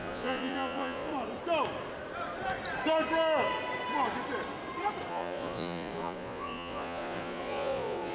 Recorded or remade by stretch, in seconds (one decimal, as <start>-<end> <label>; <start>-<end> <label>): 0.0-1.1 remade; 1.1-5.1 recorded; 5.1-8.1 remade